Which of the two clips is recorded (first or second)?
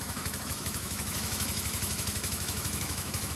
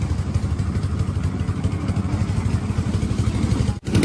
second